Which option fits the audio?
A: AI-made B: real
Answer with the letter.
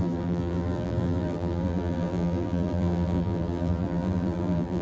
A